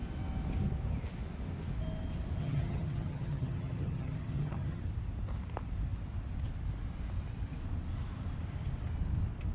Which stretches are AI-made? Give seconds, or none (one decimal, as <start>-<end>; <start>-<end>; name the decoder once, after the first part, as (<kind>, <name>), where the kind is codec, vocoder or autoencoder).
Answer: 2.4-4.8 (vocoder, HiFi-GAN)

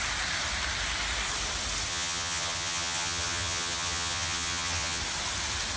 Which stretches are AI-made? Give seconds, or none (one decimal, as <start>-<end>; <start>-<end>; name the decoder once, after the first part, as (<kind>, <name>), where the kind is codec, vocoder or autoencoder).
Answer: 1.9-5.0 (vocoder, HiFi-GAN)

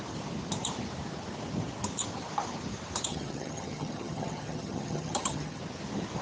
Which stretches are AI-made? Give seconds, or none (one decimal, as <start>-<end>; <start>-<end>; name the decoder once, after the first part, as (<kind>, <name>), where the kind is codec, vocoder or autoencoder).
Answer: 3.1-5.6 (vocoder, HiFi-GAN)

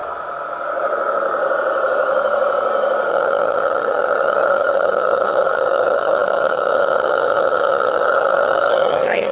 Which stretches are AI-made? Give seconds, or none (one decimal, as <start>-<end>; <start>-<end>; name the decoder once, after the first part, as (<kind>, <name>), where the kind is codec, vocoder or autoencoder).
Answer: 3.1-9.3 (vocoder, HiFi-GAN)

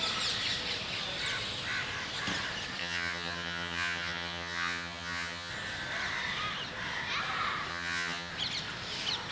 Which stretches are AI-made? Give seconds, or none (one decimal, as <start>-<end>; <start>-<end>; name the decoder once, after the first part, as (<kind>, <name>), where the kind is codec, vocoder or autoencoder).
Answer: 2.8-5.5 (vocoder, HiFi-GAN); 7.7-8.3

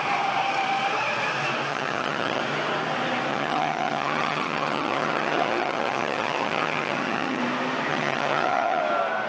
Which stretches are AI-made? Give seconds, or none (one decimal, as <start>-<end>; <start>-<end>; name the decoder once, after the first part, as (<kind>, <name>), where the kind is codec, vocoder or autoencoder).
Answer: 1.7-2.4 (vocoder, HiFi-GAN); 3.3-7.4; 7.9-8.8

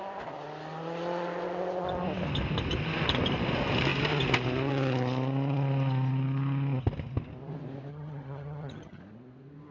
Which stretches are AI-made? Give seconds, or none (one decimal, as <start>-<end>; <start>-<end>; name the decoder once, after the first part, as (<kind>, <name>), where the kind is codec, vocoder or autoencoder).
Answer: 7.9-9.0 (vocoder, HiFi-GAN)

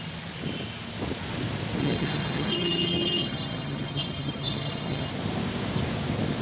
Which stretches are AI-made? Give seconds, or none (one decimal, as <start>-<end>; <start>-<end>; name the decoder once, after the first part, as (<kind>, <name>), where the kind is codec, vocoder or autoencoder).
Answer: 1.8-5.1 (vocoder, HiFi-GAN)